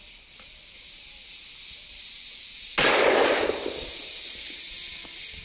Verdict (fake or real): real